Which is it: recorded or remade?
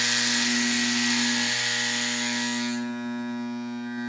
recorded